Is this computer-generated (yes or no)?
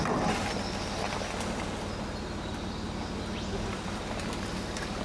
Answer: no